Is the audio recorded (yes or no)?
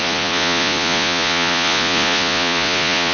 no